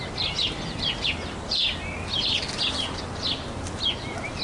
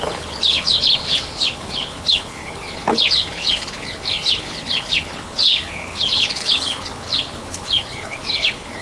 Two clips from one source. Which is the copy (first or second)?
second